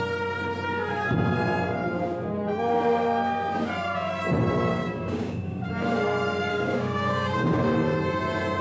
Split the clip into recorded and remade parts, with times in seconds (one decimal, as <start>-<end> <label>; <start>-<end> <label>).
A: 0.0-4.7 recorded; 4.7-5.7 remade; 5.7-6.5 recorded; 6.5-7.6 remade; 7.6-8.6 recorded